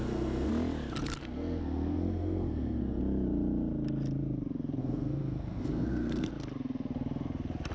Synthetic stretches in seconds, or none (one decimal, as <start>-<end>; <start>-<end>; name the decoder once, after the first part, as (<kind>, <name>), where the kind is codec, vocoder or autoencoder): 0.0-0.5 (codec, SNAC); 1.2-3.0; 4.8-6.3